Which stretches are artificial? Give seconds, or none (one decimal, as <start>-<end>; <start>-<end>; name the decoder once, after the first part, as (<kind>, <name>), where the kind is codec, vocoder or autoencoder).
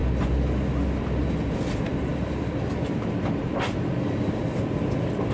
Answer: none